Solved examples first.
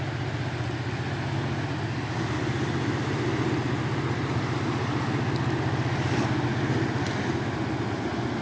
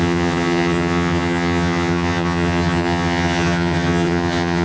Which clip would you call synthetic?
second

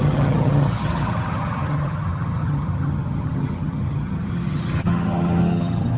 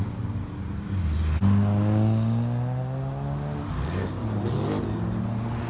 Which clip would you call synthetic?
first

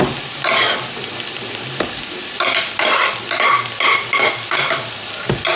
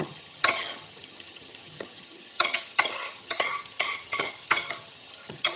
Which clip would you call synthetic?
second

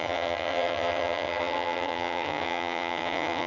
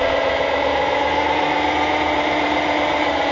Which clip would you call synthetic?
first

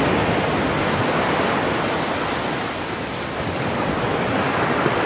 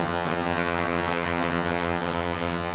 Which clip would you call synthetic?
second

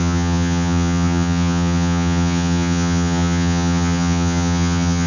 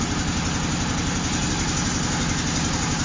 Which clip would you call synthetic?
first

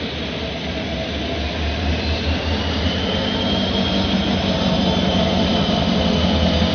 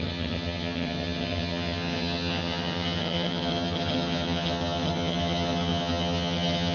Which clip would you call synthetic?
second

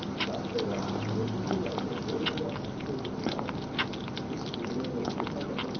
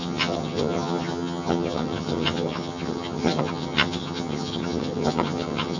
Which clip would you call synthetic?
second